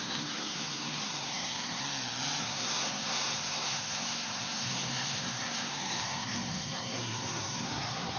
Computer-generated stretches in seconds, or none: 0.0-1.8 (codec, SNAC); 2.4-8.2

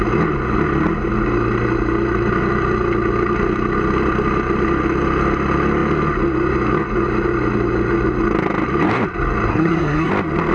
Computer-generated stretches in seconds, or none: 9.5-10.1 (codec, SNAC)

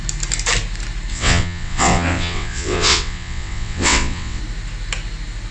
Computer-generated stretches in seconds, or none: 1.1-4.4 (vocoder, WaveNeXt)

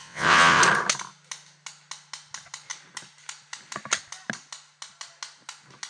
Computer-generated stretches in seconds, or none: 0.0-0.6 (vocoder, WaveNeXt)

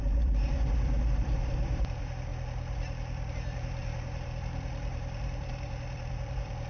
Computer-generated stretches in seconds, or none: 0.0-2.3 (vocoder, BigVGAN v2); 3.3-6.7

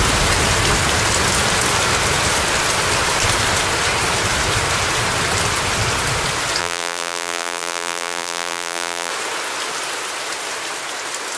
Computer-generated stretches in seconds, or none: 6.6-9.1 (vocoder, BigVGAN v2)

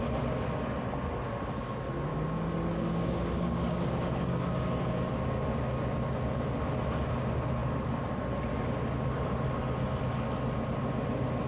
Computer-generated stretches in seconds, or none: 2.1-5.4 (codec, DAC)